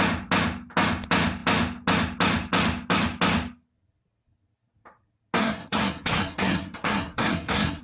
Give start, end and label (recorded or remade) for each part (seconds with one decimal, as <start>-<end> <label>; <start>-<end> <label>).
0.0-5.4 recorded; 5.4-7.8 remade